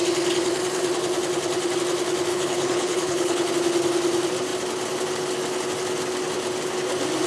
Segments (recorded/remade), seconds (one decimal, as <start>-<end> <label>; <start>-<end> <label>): 0.0-2.3 recorded; 2.3-3.5 remade; 3.5-7.3 recorded